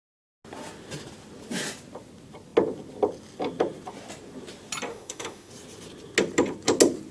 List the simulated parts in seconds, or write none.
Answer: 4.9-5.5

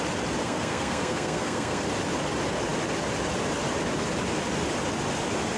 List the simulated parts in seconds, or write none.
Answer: 0.4-1.8

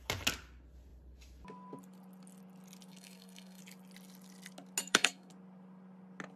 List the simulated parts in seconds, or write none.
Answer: 2.9-3.6; 4.8-5.3

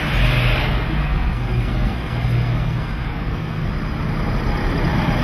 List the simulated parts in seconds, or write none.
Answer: 0.6-3.7

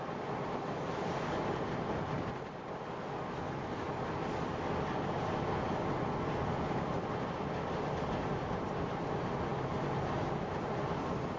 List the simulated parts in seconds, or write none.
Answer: none

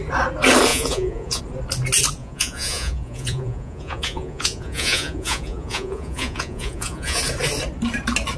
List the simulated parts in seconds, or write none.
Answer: 0.7-1.4; 2.2-7.2